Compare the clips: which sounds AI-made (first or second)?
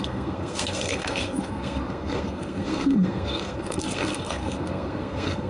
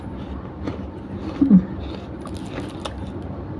first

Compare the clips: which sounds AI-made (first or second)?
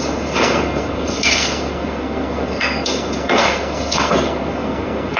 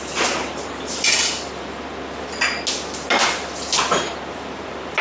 first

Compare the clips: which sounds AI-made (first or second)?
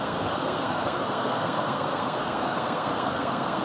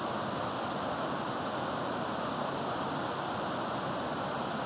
first